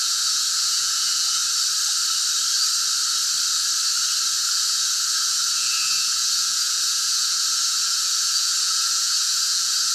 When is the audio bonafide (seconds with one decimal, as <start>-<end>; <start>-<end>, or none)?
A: 1.4-4.3